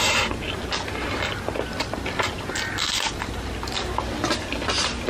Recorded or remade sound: recorded